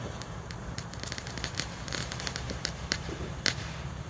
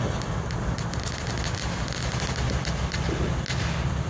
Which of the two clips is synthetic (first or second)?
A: first